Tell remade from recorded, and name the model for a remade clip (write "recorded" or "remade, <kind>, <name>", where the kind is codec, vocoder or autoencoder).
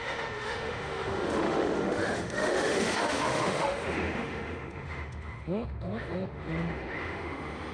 remade, autoencoder, DAC-VAE